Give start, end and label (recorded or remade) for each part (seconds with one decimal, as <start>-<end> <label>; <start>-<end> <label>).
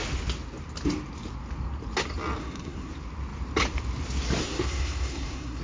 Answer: 0.0-2.4 recorded; 2.4-2.9 remade; 2.9-4.4 recorded; 4.4-5.6 remade